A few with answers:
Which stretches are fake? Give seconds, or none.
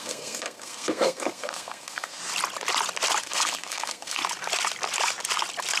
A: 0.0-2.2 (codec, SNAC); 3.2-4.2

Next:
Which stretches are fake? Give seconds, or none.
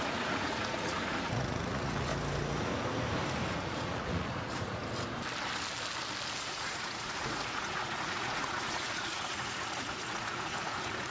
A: 0.0-2.1 (vocoder, Vocos); 3.5-4.8; 6.4-11.1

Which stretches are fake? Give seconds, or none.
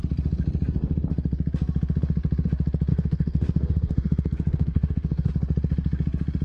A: 2.9-5.3 (codec, SNAC)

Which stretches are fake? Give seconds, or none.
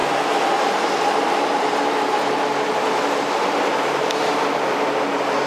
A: none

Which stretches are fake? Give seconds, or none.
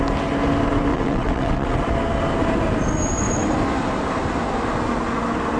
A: 0.9-1.8 (vocoder, WaveNeXt)